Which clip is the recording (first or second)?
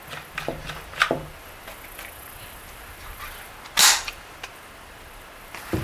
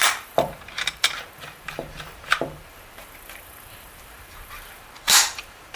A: first